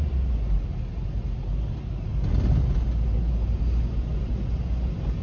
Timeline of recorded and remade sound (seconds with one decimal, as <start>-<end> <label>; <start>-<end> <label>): 0.0-5.2 recorded